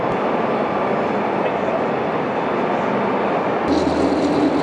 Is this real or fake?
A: real